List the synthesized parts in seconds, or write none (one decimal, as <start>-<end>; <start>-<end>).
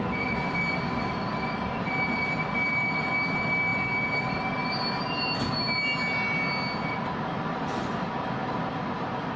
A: none